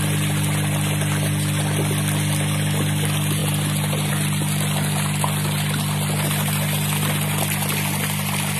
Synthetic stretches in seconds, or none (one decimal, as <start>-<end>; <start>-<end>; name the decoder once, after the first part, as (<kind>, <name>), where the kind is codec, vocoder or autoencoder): none